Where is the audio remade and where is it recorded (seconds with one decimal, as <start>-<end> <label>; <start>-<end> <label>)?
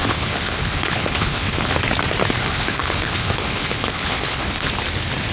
0.0-1.7 remade; 1.7-2.4 recorded; 2.4-4.7 remade; 4.7-5.3 recorded